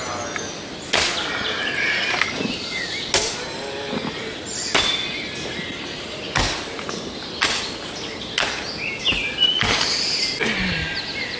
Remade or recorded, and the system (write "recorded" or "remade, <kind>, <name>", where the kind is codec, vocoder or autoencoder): recorded